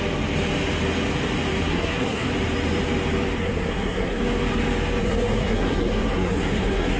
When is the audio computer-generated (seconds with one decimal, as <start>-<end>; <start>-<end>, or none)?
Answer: 1.7-2.3; 3.4-4.2; 5.0-7.0